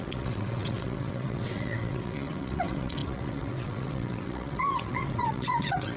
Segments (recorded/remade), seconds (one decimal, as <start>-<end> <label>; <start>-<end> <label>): 0.0-6.0 remade